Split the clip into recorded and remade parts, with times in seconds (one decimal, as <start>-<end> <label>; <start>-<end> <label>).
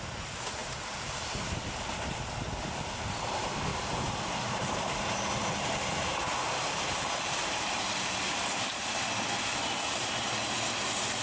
0.0-0.6 recorded; 0.6-1.5 remade; 1.5-3.7 recorded; 3.7-5.6 remade; 5.6-6.2 recorded; 6.2-8.8 remade; 8.8-11.2 recorded